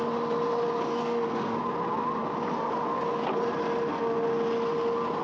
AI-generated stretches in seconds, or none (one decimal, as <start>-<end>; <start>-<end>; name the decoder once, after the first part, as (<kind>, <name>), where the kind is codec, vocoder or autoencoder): 1.0-1.6 (codec, SNAC)